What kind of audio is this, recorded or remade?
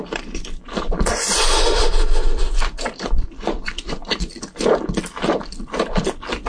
remade